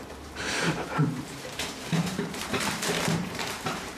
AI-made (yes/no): yes